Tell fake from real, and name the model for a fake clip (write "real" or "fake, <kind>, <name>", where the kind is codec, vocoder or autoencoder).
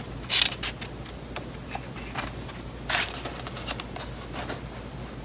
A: real